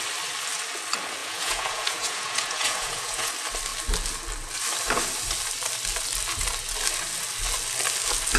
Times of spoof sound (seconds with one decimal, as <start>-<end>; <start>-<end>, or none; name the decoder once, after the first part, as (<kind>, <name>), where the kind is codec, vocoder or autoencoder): 1.2-3.3 (vocoder, Vocos)